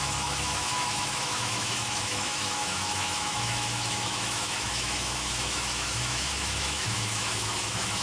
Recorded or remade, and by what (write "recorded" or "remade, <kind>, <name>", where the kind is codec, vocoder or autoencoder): remade, autoencoder, DAC-VAE